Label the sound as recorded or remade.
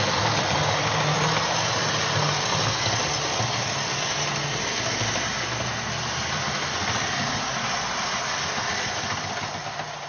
recorded